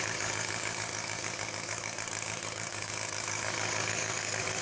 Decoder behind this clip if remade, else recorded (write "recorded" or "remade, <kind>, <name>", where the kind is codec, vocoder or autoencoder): remade, codec, DAC